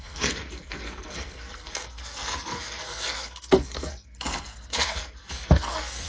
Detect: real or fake fake